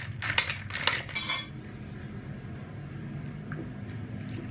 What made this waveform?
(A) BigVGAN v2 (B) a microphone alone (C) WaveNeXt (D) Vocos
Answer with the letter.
B